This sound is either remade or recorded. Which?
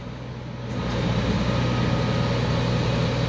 recorded